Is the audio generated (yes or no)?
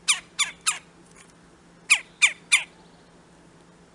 no